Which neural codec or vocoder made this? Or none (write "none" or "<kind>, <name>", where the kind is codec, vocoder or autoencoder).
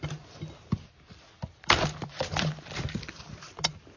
none